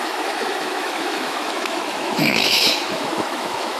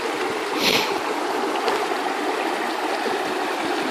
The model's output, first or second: first